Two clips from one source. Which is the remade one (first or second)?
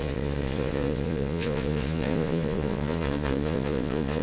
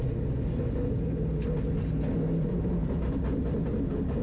first